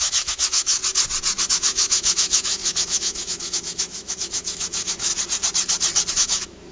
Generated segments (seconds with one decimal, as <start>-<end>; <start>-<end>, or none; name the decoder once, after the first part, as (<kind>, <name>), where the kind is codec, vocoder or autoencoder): 0.0-0.8 (autoencoder, DAC-VAE); 1.5-5.1; 6.1-6.7